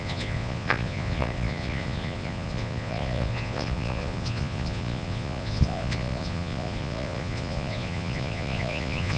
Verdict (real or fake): fake